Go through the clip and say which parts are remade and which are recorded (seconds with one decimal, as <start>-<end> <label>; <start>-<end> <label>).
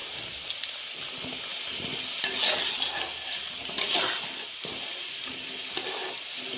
0.0-0.7 remade; 0.7-6.6 recorded